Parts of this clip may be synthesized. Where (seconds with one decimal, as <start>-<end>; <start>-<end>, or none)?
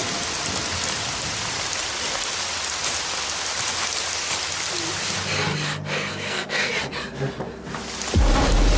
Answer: 6.1-6.7